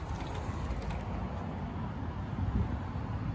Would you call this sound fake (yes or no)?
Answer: no